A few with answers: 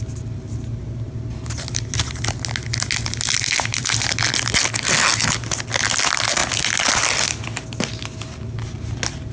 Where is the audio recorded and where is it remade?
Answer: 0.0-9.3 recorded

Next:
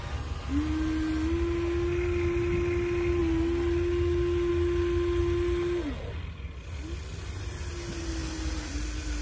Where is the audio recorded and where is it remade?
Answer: 0.0-9.2 recorded

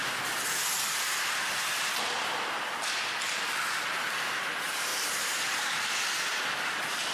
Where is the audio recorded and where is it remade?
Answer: 0.0-7.1 recorded

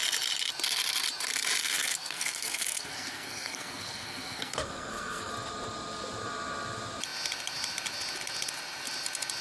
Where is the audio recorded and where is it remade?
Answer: 0.0-1.6 recorded; 1.6-5.3 remade; 5.3-9.4 recorded

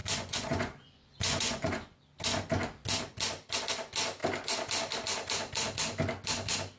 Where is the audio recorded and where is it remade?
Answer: 0.0-2.0 remade; 2.0-6.8 recorded

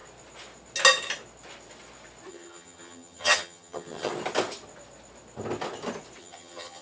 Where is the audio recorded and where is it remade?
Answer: 0.0-2.3 recorded; 2.3-4.1 remade; 4.1-6.2 recorded; 6.2-6.8 remade

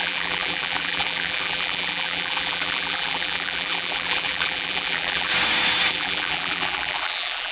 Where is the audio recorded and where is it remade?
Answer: 0.0-5.3 remade; 5.3-5.9 recorded; 5.9-7.5 remade